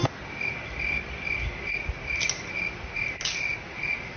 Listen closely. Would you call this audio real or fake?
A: real